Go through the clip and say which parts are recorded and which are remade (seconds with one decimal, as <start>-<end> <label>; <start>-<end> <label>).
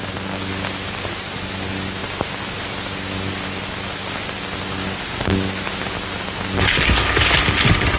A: 0.0-8.0 recorded